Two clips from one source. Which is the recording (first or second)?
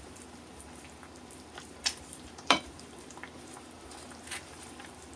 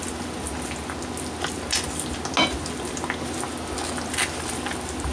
second